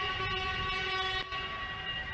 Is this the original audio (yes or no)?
yes